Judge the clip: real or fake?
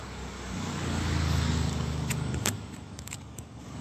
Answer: fake